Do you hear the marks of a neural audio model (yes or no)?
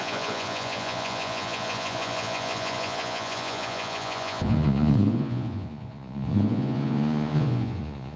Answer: yes